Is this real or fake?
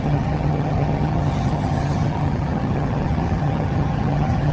fake